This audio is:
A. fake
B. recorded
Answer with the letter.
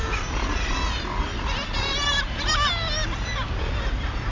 B